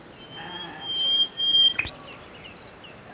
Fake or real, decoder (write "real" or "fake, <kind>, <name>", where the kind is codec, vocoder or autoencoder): real